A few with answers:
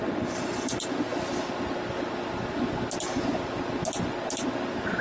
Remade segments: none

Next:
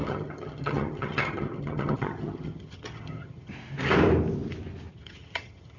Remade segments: 0.0-3.5 (vocoder, HiFi-GAN); 4.9-5.8